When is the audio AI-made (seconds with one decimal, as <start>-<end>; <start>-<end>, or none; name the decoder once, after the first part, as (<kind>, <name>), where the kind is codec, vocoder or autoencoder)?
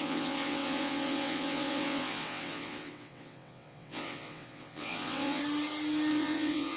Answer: 0.0-5.4 (vocoder, WaveNeXt); 6.1-6.8